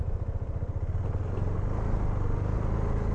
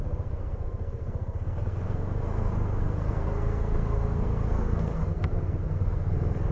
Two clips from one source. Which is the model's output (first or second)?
second